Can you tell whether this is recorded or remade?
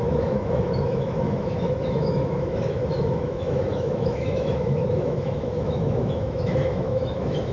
remade